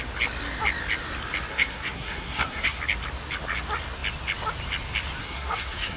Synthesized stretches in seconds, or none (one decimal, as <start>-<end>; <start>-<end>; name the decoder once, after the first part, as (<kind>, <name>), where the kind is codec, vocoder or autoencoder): 1.5-2.8 (codec, SNAC); 5.2-6.0